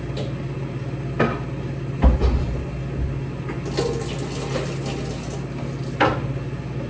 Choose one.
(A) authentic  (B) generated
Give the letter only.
A